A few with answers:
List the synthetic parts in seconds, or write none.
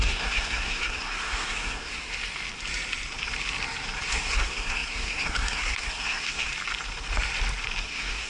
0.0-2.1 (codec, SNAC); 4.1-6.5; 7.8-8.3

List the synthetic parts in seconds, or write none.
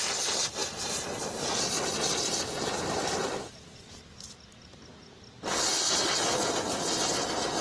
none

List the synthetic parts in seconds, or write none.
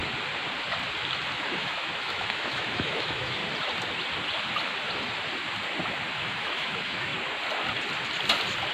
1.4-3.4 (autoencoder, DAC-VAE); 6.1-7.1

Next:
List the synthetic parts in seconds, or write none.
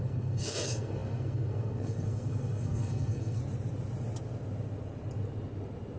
0.0-3.4 (codec, SNAC)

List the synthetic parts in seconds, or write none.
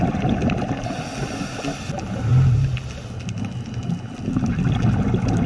none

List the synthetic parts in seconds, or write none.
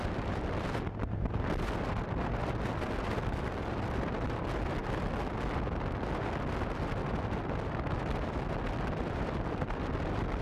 none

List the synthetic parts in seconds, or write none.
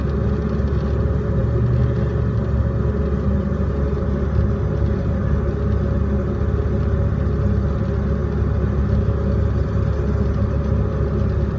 none